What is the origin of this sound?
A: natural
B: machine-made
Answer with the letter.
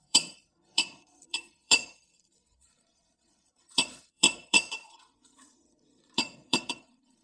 B